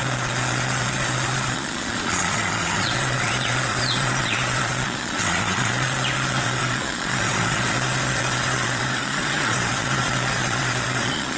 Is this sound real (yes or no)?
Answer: no